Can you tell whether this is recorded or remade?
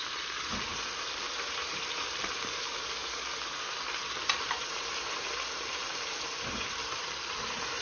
remade